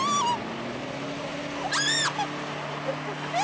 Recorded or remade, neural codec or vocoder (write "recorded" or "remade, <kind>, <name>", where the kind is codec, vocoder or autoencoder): recorded